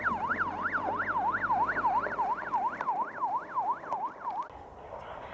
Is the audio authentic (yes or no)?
yes